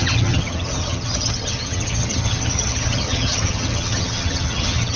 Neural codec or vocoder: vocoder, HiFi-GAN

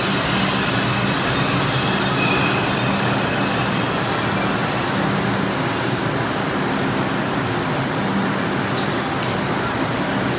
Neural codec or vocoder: none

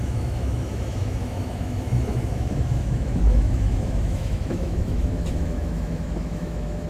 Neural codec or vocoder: autoencoder, DAC-VAE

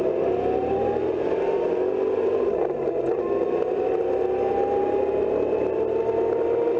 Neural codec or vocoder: none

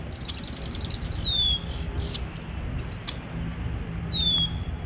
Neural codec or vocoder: none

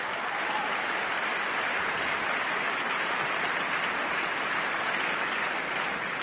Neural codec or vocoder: none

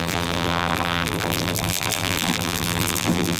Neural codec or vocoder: vocoder, BigVGAN v2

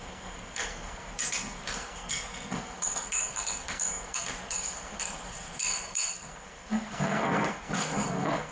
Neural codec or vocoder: codec, SNAC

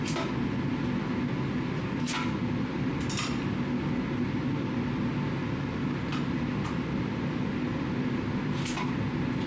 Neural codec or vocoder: none